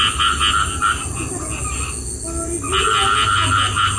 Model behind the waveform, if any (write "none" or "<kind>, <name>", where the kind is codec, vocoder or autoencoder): none